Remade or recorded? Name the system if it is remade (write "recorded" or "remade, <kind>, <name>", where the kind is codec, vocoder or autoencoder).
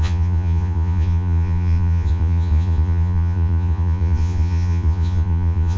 remade, vocoder, Vocos